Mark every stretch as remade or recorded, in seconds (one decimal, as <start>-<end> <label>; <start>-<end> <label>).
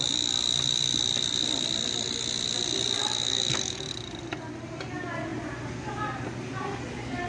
0.0-3.0 recorded; 3.0-3.9 remade; 3.9-7.3 recorded